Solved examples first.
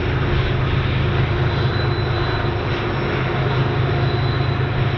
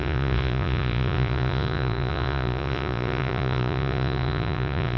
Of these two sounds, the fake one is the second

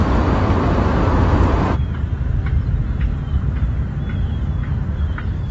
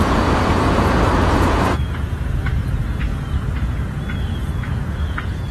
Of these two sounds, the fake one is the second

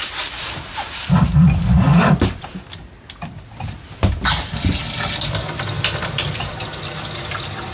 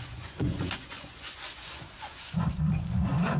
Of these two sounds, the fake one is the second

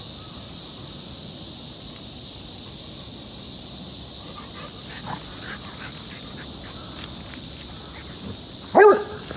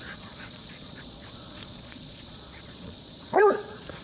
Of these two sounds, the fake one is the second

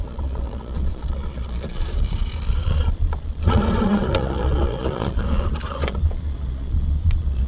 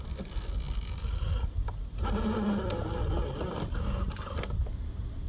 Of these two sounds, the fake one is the first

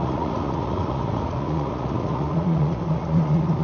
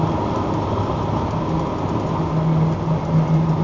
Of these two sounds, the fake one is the first